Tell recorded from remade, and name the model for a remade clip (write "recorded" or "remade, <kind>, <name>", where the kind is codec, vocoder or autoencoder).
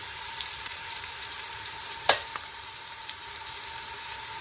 remade, vocoder, BigVGAN v2